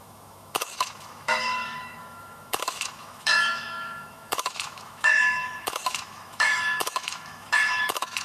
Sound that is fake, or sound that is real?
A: fake